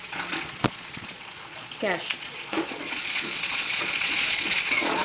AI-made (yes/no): yes